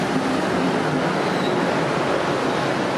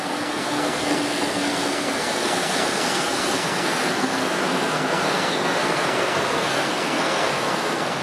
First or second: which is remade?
second